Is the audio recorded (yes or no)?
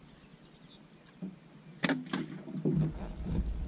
yes